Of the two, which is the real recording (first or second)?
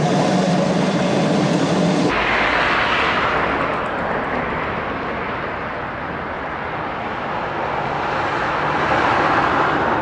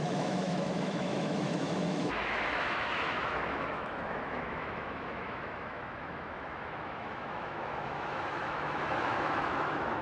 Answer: first